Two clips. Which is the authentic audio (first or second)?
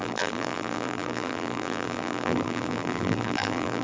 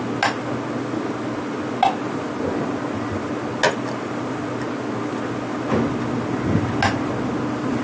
second